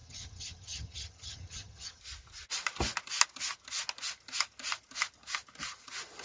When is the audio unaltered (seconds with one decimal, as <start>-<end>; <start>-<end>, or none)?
2.0-6.2